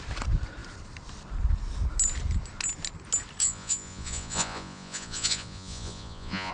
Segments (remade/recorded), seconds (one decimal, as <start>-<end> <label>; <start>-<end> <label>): 0.0-3.4 recorded; 3.4-6.5 remade